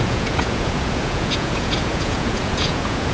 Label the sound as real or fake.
fake